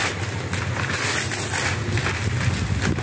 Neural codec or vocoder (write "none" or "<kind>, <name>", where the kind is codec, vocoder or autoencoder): none